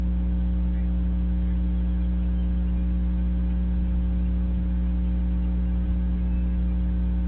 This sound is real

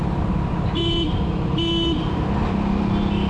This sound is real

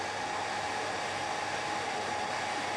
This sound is real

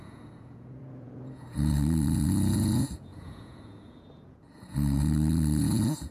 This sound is fake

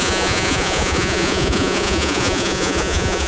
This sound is fake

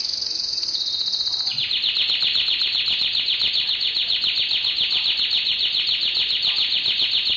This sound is real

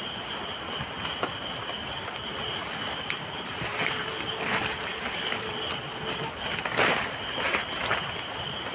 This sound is real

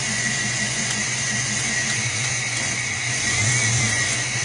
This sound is fake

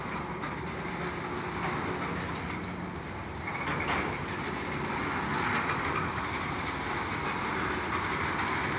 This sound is real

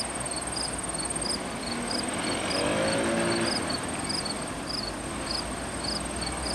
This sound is real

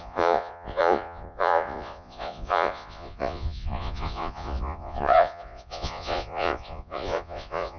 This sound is fake